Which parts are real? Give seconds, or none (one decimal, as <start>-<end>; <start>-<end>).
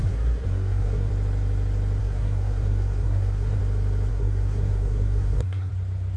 1.1-2.0; 3.6-4.1; 5.7-6.2